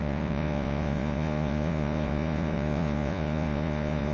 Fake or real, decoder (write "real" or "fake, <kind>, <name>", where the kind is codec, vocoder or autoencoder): fake, vocoder, Vocos